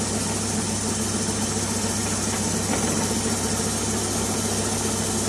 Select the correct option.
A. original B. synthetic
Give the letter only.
A